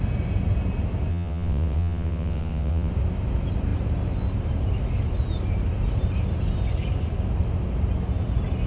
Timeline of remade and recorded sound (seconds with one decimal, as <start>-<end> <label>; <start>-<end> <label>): 0.0-1.1 recorded; 1.1-2.9 remade; 2.9-8.7 recorded